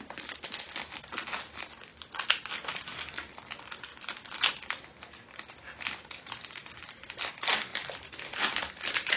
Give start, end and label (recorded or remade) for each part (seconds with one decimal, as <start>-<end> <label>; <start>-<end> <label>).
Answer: 0.0-9.2 recorded